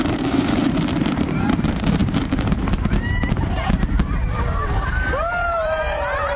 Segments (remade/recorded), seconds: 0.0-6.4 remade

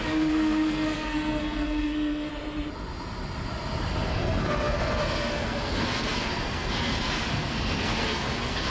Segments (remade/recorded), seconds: 0.0-2.3 remade; 2.3-4.1 recorded; 4.1-8.7 remade